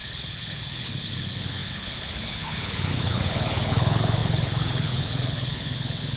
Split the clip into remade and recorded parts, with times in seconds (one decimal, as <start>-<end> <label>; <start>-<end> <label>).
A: 0.0-6.2 remade